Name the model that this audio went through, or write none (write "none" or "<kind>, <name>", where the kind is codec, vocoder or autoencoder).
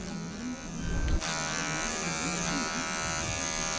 none